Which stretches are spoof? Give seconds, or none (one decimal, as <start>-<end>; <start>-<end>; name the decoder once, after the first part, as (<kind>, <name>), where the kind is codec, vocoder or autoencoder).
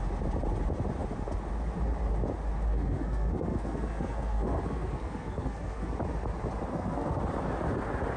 2.7-5.9 (codec, SNAC); 6.7-7.2